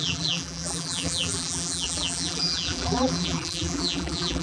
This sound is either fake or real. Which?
fake